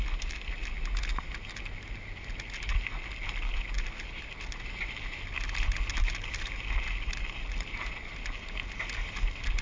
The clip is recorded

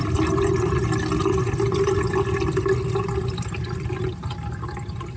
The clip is recorded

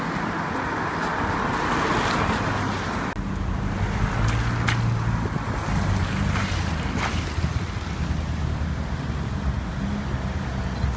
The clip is recorded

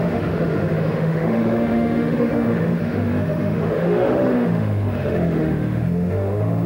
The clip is remade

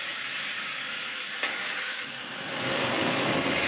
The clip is remade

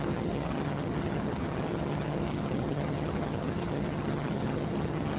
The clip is remade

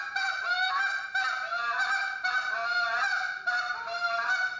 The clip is recorded